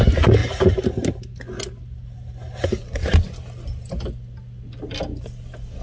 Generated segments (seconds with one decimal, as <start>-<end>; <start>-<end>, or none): none

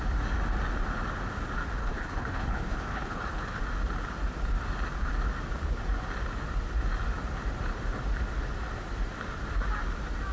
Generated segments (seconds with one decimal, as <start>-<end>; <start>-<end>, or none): 1.8-3.6

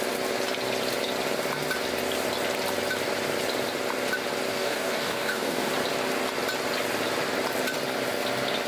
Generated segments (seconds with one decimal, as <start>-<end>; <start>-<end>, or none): 4.5-5.7